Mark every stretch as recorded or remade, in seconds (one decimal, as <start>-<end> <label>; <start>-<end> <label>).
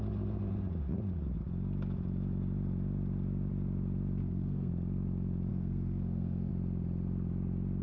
0.0-4.2 recorded; 4.2-4.7 remade; 4.7-5.5 recorded; 5.5-6.5 remade; 6.5-7.8 recorded